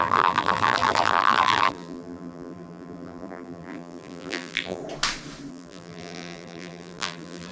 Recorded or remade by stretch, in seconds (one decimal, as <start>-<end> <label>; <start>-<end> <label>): 0.0-4.8 remade; 4.8-5.5 recorded; 5.5-7.5 remade